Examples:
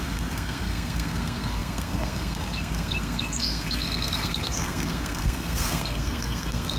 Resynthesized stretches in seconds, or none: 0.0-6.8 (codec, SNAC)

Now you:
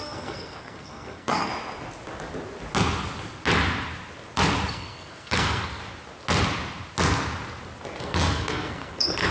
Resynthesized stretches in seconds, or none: 0.0-1.5 (codec, SNAC); 4.7-5.8; 8.0-9.3

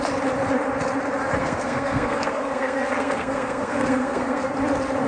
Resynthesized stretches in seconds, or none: 1.4-4.5 (codec, SNAC)